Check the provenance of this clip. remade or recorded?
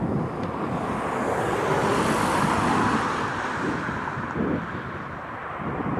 recorded